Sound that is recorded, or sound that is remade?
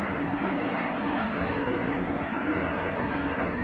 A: remade